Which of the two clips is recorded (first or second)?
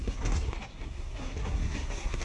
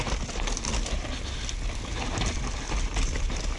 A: second